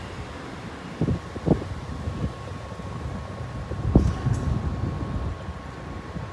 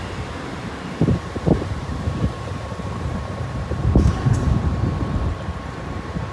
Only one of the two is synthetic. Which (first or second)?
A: second